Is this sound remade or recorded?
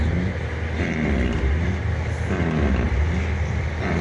recorded